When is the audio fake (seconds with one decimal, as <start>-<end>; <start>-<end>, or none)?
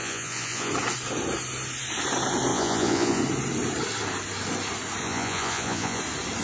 0.0-0.7; 2.5-3.2; 5.0-6.0